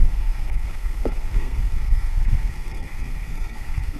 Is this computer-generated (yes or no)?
yes